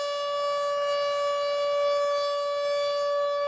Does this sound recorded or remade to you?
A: recorded